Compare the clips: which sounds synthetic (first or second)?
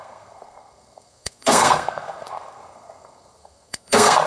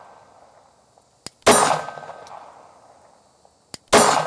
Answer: first